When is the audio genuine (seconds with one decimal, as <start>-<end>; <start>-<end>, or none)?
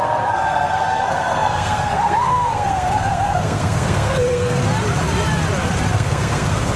4.6-5.9